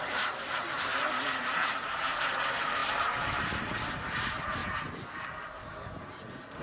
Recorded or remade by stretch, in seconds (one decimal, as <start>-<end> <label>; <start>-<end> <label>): 0.0-0.9 remade; 0.9-1.7 recorded; 1.7-4.6 remade; 4.6-6.6 recorded